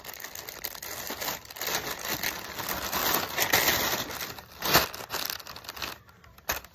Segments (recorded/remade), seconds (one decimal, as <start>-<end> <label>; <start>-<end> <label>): 0.0-6.7 recorded